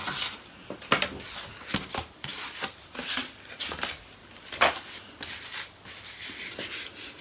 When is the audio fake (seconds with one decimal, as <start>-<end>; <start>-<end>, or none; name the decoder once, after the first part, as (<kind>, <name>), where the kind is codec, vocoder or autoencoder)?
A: none